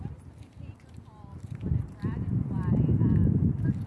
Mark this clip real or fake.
real